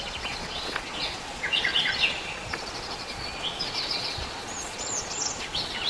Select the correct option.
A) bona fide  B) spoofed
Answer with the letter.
B